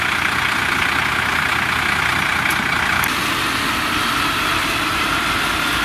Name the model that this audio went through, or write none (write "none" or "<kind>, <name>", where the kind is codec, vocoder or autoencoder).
none